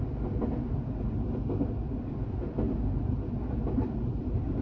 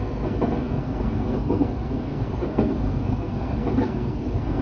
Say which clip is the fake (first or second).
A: second